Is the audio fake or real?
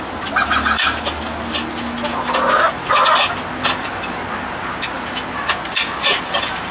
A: real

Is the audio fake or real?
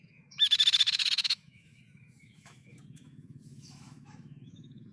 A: fake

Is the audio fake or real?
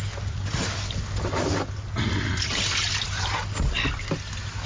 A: real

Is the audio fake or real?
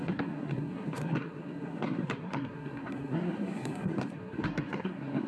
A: fake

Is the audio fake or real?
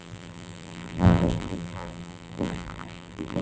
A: fake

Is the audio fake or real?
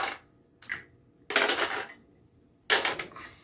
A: real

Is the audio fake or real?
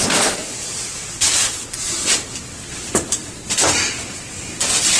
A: real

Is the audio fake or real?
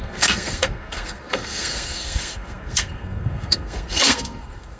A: fake